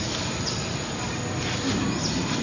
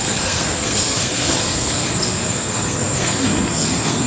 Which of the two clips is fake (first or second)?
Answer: second